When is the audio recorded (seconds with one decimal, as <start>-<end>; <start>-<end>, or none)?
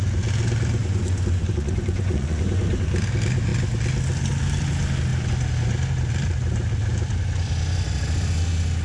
0.0-0.8; 2.6-8.8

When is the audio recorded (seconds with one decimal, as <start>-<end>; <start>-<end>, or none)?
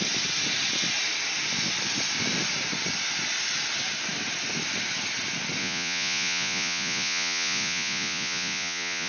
0.0-5.6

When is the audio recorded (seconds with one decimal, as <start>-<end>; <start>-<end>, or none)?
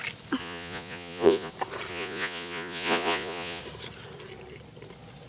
0.0-0.4; 1.5-1.9; 3.6-5.3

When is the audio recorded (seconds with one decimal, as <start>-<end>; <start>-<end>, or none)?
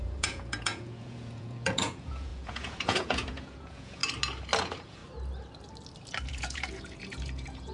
4.0-4.6; 5.0-6.3